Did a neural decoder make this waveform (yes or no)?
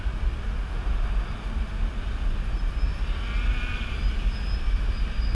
no